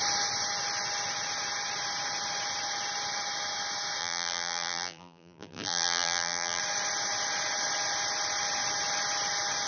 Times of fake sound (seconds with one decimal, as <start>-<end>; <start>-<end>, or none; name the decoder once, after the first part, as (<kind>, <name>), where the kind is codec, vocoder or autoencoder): 4.0-6.6 (vocoder, BigVGAN v2)